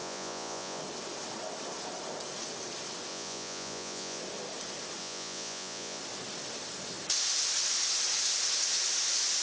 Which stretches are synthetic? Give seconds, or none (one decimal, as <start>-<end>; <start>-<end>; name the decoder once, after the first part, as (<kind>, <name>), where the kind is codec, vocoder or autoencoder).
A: 0.0-0.8 (vocoder, Vocos); 3.1-4.2; 5.0-6.0

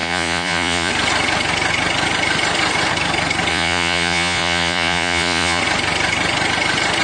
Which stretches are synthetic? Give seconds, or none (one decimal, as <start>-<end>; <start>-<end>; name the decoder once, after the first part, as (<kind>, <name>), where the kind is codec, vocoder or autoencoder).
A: 0.0-0.9 (vocoder, Vocos); 3.5-5.6

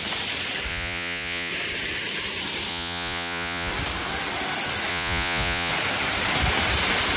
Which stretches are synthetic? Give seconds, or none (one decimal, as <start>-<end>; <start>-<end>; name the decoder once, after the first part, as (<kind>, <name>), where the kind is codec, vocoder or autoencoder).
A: 0.7-1.5 (vocoder, Vocos); 2.7-3.7; 4.9-5.7

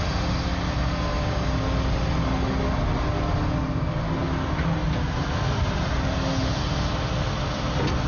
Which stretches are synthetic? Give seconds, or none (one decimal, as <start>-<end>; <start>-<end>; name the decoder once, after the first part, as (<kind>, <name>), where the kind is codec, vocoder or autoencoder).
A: none